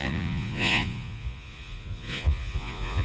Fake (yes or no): yes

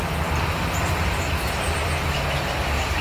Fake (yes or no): no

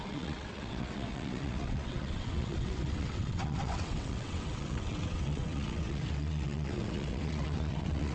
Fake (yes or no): yes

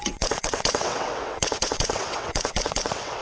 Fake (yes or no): yes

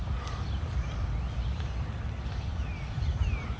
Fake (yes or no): no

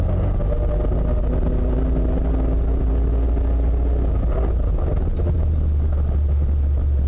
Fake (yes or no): no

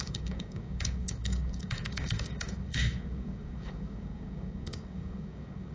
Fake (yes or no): yes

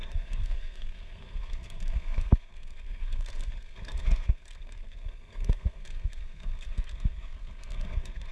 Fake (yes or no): yes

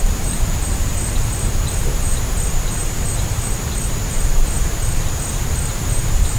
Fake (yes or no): yes